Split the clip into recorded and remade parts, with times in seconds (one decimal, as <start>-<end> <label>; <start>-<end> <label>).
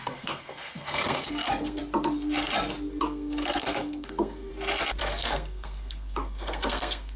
0.0-1.8 remade; 1.8-3.0 recorded; 3.0-4.5 remade; 4.5-5.0 recorded; 5.0-7.2 remade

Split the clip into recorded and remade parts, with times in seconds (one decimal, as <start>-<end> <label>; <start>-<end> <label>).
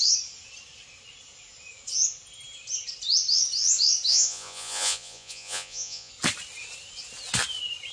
0.0-4.1 recorded; 4.1-6.1 remade; 6.1-7.9 recorded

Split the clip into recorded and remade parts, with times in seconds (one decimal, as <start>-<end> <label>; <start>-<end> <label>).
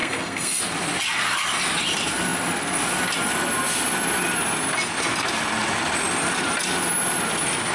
0.0-0.6 remade; 0.6-7.7 recorded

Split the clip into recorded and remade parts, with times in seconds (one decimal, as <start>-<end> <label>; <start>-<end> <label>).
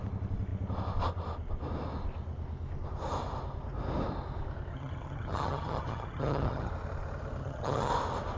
0.0-4.7 recorded; 4.7-6.7 remade; 6.7-7.4 recorded; 7.4-7.9 remade; 7.9-8.4 recorded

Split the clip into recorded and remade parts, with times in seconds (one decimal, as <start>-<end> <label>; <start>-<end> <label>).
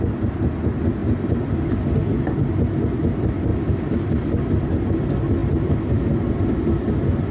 0.0-7.3 recorded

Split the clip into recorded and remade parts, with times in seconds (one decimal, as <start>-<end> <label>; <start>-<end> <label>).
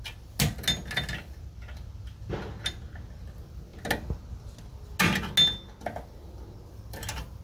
0.0-7.4 recorded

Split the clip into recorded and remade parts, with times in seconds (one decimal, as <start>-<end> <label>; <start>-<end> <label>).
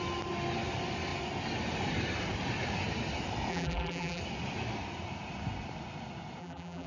0.0-3.5 recorded; 3.5-4.2 remade; 4.2-6.4 recorded; 6.4-6.9 remade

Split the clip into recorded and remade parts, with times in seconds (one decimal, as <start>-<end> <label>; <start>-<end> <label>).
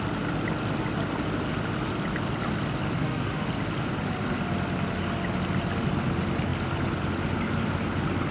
0.0-3.0 recorded; 3.0-3.5 remade; 3.5-8.3 recorded